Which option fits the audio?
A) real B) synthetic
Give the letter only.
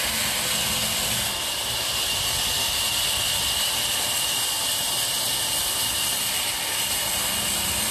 A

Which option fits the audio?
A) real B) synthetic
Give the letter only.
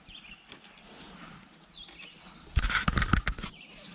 A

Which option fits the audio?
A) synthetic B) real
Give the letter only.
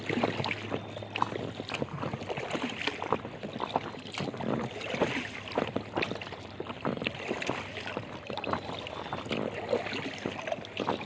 B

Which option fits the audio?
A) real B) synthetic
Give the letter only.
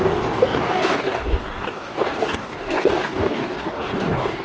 B